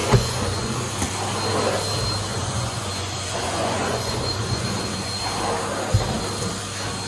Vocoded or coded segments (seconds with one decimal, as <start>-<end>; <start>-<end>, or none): 0.0-0.9; 2.3-5.2